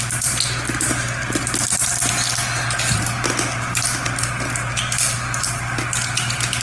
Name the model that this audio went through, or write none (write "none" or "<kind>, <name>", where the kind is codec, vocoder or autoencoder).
none